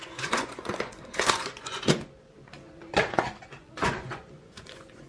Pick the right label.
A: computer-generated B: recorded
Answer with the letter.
A